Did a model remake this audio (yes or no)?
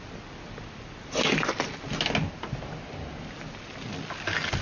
no